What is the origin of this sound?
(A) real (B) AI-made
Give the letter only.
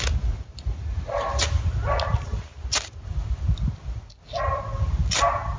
A